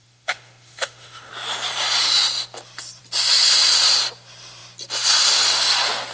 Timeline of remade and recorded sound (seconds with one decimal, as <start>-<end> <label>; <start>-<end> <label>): 0.0-1.3 remade; 1.3-6.1 recorded